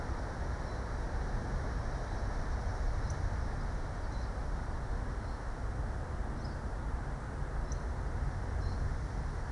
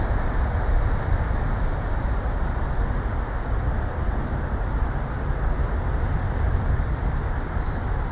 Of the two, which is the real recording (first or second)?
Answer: first